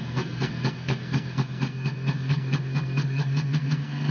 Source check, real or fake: fake